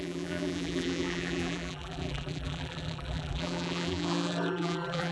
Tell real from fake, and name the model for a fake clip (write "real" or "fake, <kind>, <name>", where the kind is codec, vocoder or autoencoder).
fake, vocoder, BigVGAN v2